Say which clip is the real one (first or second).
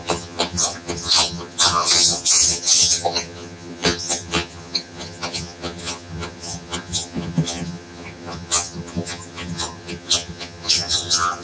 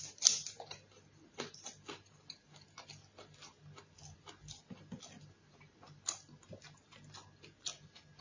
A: second